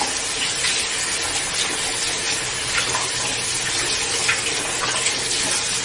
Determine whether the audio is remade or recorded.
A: recorded